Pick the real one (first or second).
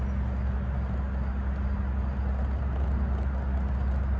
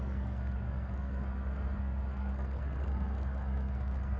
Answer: first